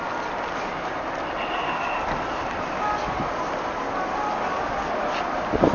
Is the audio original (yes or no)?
yes